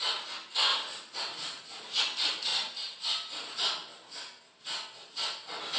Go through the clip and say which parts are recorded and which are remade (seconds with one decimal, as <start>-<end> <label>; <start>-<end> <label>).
0.0-0.7 recorded; 0.7-2.0 remade; 2.0-5.8 recorded